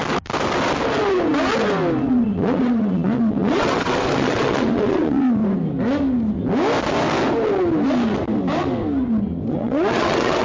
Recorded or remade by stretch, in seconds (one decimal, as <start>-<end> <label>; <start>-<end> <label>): 0.0-2.0 recorded; 2.0-5.4 remade; 5.4-9.5 recorded; 9.5-10.4 remade

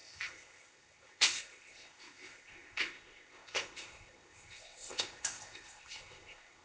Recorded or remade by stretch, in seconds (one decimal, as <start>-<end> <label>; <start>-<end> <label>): 0.0-6.6 remade

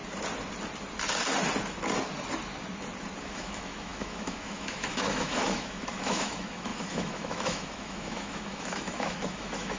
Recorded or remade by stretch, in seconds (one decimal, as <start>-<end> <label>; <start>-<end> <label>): 0.0-3.2 recorded; 3.2-9.8 remade

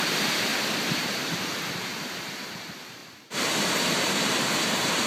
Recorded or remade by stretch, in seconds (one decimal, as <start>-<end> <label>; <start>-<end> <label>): 0.0-0.5 remade; 0.5-1.0 recorded; 1.0-1.5 remade; 1.5-2.2 recorded; 2.2-5.1 remade

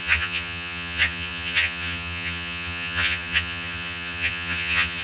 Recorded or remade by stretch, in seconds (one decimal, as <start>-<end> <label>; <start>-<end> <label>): 0.0-5.0 remade